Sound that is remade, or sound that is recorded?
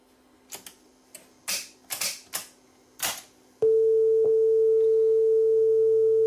recorded